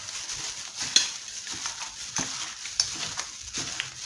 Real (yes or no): yes